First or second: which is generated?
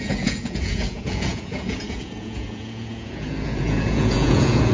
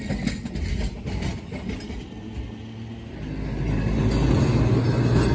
first